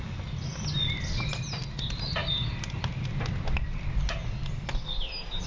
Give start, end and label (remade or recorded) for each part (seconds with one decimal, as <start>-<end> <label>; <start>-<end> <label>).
0.0-5.5 recorded